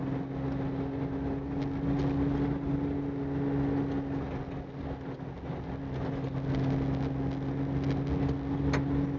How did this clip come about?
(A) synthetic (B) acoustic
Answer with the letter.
B